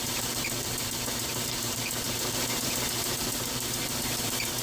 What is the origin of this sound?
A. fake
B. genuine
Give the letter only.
A